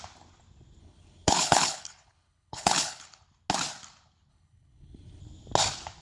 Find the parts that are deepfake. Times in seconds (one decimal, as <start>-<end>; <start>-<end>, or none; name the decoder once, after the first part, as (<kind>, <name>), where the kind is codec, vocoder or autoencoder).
0.8-3.2 (codec, HILCodec); 4.3-5.2

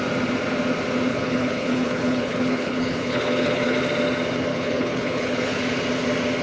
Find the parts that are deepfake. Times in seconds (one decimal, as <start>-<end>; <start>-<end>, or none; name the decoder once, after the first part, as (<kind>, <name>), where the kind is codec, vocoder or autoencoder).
1.1-3.8 (codec, HILCodec); 4.5-5.6

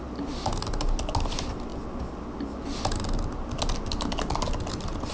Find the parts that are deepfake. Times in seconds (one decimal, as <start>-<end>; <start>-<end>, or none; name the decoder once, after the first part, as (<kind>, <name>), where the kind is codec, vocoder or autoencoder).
none

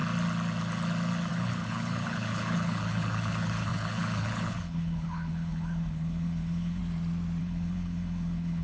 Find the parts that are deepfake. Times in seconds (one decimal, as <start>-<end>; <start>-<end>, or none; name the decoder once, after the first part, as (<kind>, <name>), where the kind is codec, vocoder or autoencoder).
1.3-6.8 (codec, HILCodec); 7.4-8.6

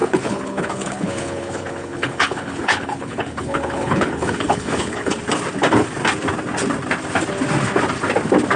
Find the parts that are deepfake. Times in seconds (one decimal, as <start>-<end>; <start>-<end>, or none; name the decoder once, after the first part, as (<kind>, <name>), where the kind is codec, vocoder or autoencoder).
0.0-5.2 (codec, HILCodec)

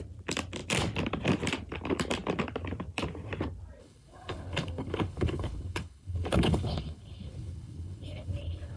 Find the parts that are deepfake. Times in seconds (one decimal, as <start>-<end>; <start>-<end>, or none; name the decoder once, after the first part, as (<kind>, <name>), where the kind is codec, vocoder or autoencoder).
3.8-8.8 (codec, HILCodec)

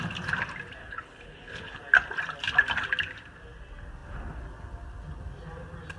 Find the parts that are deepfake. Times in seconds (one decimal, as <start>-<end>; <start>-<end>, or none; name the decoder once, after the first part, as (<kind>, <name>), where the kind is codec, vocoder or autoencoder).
0.8-1.8 (codec, HILCodec)

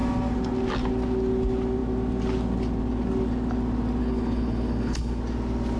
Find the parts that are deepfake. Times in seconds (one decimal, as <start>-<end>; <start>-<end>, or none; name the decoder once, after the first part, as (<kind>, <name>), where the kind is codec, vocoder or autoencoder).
4.0-5.2 (codec, HILCodec)